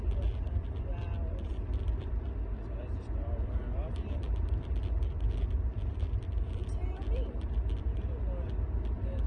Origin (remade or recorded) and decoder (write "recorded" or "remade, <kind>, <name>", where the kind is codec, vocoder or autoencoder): remade, vocoder, BigVGAN v2